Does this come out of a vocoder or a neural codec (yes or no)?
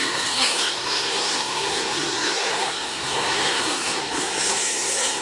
yes